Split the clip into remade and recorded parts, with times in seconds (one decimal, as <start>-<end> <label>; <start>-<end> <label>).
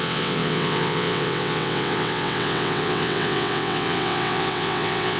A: 0.0-5.2 remade